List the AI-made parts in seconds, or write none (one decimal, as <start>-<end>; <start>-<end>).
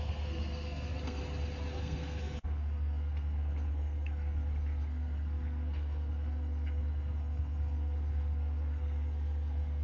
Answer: 0.0-1.2; 1.8-9.8